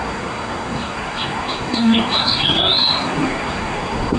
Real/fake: fake